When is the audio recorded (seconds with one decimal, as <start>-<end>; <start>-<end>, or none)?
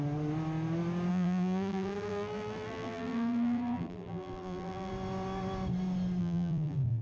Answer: 0.0-1.1; 4.9-6.2